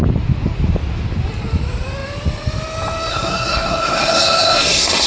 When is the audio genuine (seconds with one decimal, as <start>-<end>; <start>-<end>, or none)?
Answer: 0.0-3.1